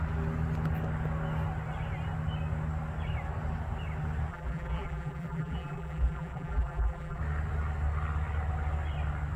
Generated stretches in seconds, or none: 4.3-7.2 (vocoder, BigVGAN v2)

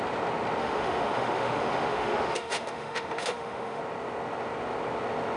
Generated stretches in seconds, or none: 0.6-3.8 (autoencoder, DAC-VAE)

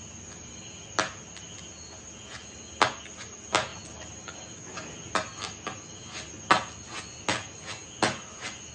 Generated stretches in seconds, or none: none

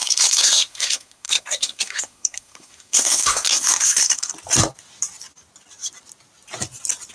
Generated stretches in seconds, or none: 0.0-4.3 (codec, SNAC)